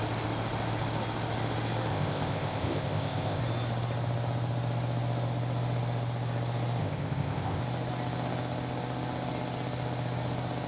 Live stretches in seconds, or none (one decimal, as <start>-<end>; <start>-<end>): 0.0-1.9; 3.4-6.8; 7.6-10.7